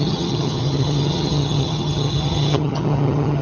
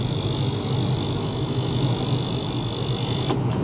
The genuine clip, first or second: second